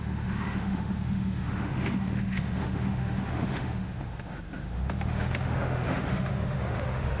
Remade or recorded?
remade